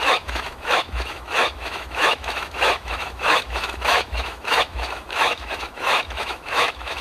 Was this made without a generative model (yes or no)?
no